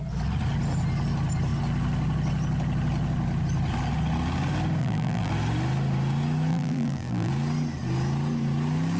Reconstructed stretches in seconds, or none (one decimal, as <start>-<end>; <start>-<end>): 4.8-5.3; 6.5-7.3